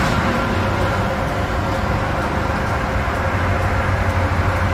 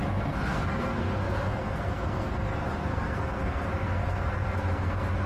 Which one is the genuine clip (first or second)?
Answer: first